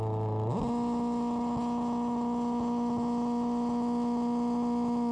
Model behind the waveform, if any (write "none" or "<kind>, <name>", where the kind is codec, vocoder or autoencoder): none